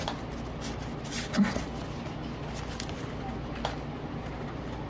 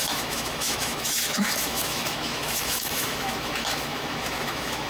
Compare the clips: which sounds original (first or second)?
first